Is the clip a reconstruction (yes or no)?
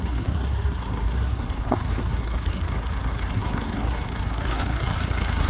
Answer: yes